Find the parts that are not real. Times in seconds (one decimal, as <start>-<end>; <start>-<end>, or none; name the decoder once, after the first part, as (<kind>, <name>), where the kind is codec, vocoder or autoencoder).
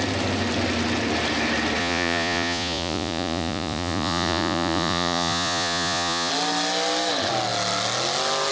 1.8-6.3 (vocoder, Vocos)